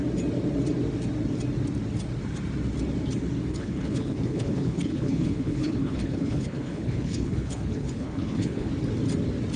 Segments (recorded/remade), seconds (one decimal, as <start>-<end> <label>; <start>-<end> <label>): 0.0-3.5 recorded; 3.5-8.7 remade; 8.7-9.6 recorded